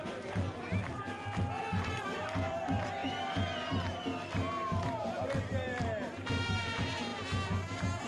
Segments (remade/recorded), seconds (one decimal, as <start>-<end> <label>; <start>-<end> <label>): 0.0-3.0 remade; 3.0-5.4 recorded; 5.4-7.1 remade; 7.1-8.1 recorded